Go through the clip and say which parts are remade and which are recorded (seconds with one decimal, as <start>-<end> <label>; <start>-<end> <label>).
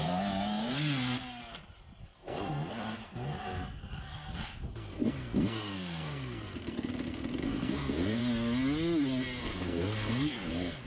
0.0-1.4 remade; 1.4-2.0 recorded; 2.0-8.2 remade; 8.2-9.4 recorded; 9.4-10.9 remade